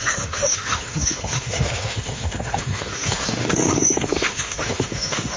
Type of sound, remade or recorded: remade